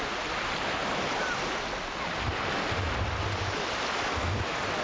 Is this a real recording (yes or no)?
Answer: yes